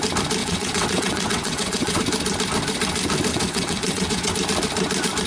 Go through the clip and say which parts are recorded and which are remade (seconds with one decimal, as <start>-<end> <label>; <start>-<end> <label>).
0.0-0.4 recorded; 0.4-2.0 remade; 2.0-3.3 recorded; 3.3-4.3 remade; 4.3-5.3 recorded